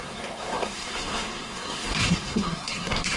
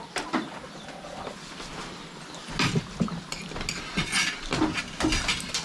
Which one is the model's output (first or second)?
first